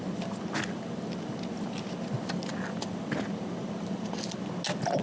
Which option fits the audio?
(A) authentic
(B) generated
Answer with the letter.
A